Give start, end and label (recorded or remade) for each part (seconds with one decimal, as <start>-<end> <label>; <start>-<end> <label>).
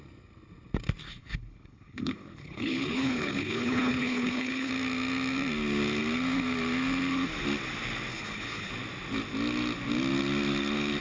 0.0-1.1 recorded; 1.1-4.7 remade; 4.7-8.1 recorded; 8.1-8.7 remade; 8.7-11.0 recorded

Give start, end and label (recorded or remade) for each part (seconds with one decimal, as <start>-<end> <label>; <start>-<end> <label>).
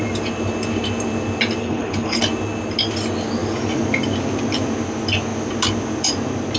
0.0-1.6 recorded; 1.6-2.2 remade; 2.2-6.6 recorded